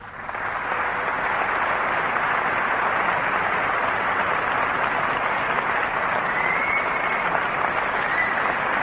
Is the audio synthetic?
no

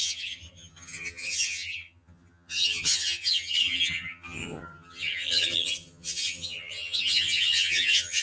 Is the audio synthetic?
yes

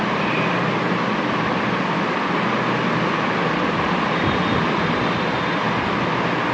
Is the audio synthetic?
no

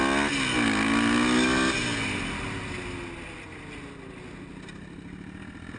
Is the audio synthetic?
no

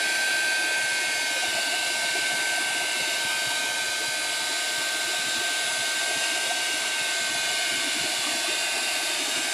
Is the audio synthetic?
no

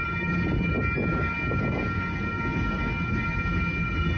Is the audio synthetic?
no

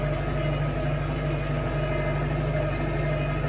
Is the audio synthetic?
no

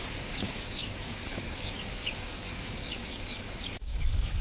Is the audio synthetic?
yes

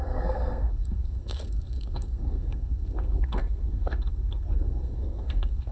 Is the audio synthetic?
yes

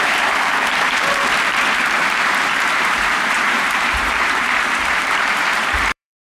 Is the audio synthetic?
yes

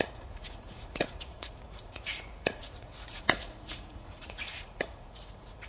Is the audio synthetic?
yes